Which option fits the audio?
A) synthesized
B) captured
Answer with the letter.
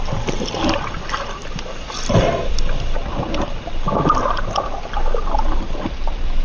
B